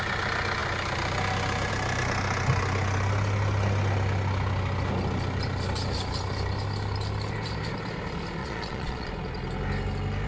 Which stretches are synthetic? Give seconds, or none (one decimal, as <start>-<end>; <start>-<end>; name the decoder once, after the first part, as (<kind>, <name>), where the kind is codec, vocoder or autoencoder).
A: 8.4-9.1 (vocoder, Vocos)